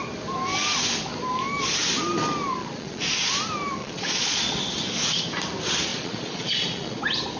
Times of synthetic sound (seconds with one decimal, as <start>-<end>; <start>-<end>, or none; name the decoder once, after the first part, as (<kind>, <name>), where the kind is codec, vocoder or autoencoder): 2.6-3.3 (vocoder, Vocos); 3.8-4.6; 5.9-7.0